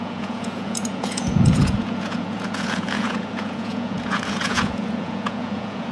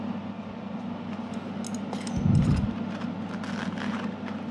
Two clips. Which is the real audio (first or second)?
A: second